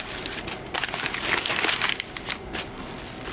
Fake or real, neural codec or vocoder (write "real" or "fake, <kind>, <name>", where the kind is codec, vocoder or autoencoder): fake, vocoder, BigVGAN v2